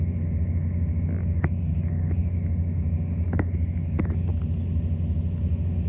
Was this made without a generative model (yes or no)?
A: yes